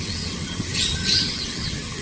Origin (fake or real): fake